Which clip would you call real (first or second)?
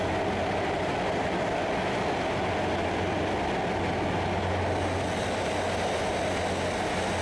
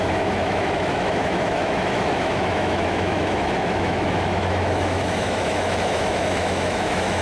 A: first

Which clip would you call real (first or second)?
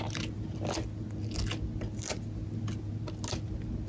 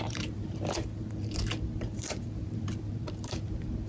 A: first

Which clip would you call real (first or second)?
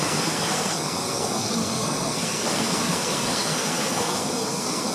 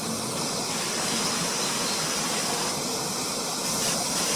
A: second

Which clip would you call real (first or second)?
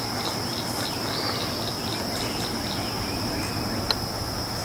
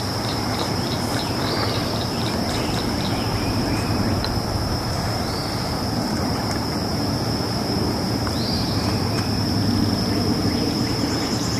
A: first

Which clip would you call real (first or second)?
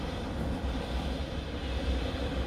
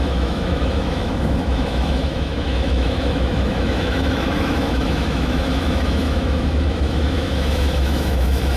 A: first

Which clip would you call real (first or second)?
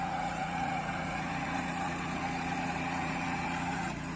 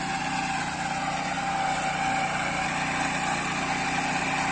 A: second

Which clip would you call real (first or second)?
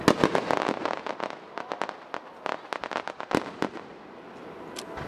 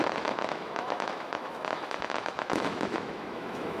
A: first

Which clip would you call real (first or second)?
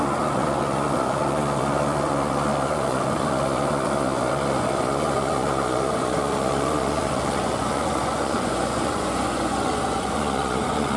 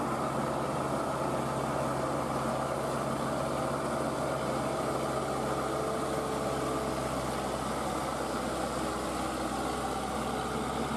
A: second